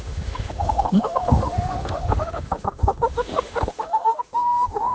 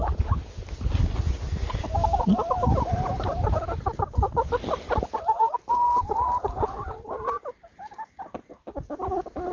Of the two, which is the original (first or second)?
second